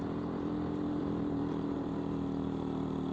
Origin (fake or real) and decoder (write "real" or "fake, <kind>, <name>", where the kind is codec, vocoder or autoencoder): fake, vocoder, BigVGAN v2